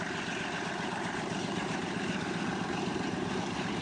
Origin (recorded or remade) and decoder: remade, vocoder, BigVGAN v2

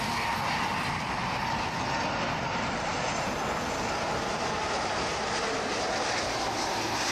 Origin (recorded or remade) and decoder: recorded